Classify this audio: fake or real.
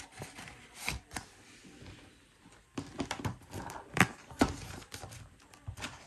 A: fake